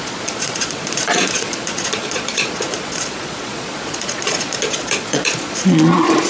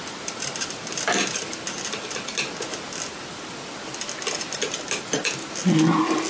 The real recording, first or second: second